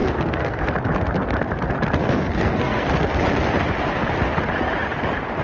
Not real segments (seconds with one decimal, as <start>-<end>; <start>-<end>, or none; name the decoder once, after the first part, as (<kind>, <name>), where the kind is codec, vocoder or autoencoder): 0.0-0.6 (codec, SNAC); 2.0-2.9